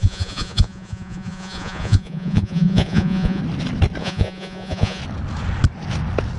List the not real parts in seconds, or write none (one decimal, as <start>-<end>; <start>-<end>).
0.0-3.4; 4.0-5.0